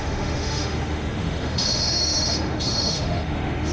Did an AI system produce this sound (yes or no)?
yes